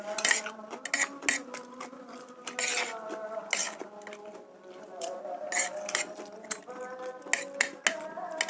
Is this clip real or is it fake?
real